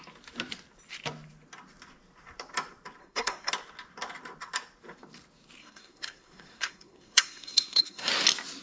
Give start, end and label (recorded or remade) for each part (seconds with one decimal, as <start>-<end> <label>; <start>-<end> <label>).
0.0-3.0 recorded; 3.0-3.5 remade; 3.5-5.6 recorded; 5.6-8.1 remade; 8.1-8.6 recorded

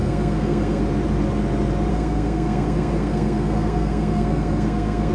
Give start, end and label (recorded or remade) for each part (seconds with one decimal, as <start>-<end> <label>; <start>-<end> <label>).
0.0-0.8 remade; 0.8-1.9 recorded; 1.9-5.1 remade

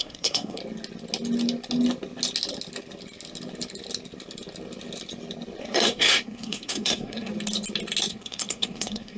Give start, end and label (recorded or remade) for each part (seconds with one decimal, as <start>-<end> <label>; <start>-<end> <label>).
0.0-0.6 remade; 0.6-5.6 recorded; 5.6-7.3 remade; 7.3-8.1 recorded; 8.1-9.2 remade